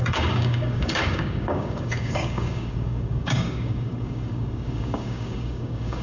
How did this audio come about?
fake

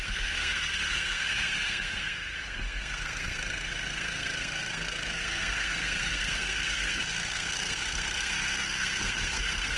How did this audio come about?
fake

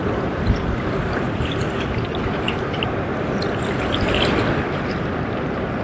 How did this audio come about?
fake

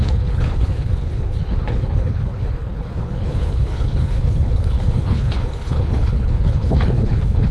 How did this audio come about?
fake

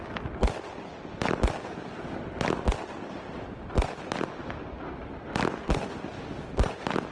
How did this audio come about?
real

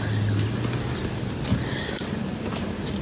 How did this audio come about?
real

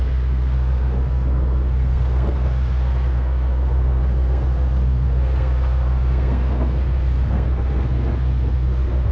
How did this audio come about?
fake